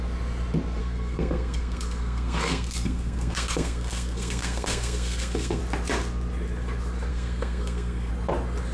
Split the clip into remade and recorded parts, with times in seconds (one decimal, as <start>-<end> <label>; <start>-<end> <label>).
0.0-0.8 recorded; 0.8-5.6 remade; 5.6-7.1 recorded; 7.1-8.1 remade; 8.1-8.7 recorded